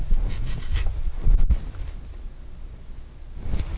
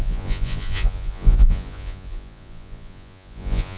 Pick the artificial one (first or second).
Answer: second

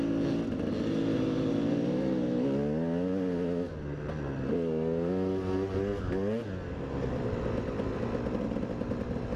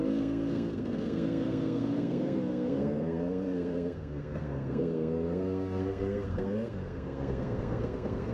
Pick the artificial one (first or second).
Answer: second